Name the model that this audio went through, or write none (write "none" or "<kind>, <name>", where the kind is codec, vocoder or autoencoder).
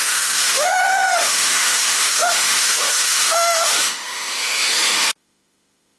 autoencoder, DAC-VAE